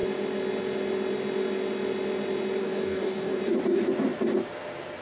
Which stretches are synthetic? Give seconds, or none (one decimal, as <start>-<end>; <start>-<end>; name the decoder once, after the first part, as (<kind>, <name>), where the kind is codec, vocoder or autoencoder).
2.6-3.4 (codec, DAC)